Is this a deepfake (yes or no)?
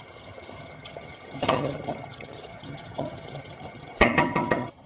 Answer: yes